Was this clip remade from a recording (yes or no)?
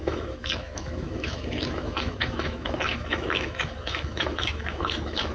yes